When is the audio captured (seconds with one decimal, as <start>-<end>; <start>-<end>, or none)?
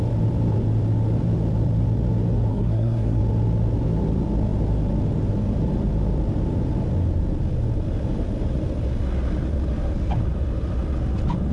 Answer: 0.0-2.5; 3.2-11.5